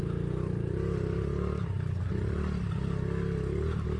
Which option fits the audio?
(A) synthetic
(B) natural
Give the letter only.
B